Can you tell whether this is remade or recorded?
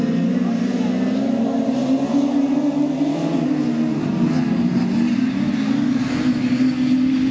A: recorded